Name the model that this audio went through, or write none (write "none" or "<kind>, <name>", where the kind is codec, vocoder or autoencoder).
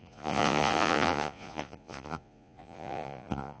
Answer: vocoder, Vocos